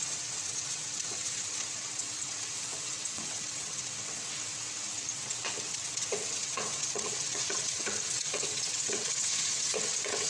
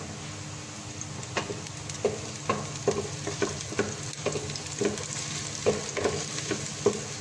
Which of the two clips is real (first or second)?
second